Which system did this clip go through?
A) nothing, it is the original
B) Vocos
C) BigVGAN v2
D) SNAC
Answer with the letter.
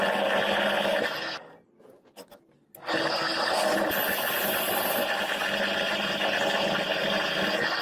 A